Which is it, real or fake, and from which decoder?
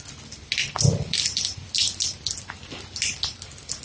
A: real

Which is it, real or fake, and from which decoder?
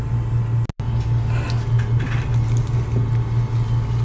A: real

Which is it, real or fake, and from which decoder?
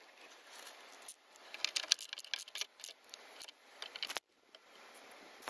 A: real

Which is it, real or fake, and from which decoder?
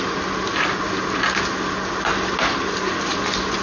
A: real